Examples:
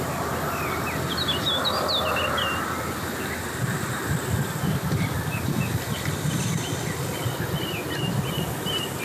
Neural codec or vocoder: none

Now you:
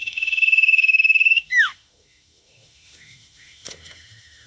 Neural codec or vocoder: autoencoder, DAC-VAE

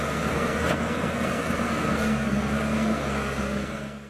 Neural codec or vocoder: codec, SNAC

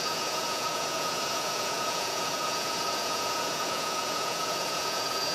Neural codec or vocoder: vocoder, Vocos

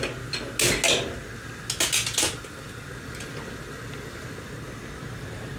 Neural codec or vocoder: none